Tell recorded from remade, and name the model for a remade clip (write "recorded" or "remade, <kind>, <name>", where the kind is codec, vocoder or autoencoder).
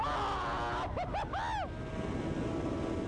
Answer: recorded